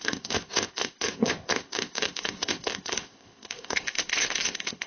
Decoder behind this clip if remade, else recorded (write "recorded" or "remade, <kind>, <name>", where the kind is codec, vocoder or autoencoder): remade, codec, ZipCodec